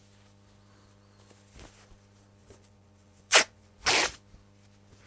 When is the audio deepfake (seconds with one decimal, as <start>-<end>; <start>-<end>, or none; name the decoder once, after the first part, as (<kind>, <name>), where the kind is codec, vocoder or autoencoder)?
2.4-3.9 (vocoder, Vocos)